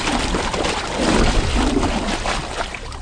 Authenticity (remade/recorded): recorded